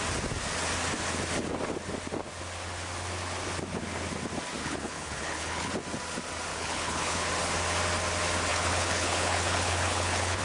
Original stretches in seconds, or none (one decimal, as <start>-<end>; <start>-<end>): 0.0-4.6; 5.7-6.5; 7.3-8.5